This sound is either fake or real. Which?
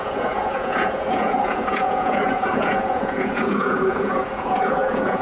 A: fake